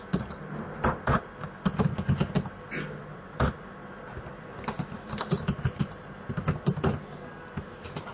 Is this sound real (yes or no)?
yes